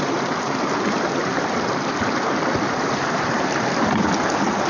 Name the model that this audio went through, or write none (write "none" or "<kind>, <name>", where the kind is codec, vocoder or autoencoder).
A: none